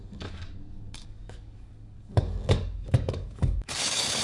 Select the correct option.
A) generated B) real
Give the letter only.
A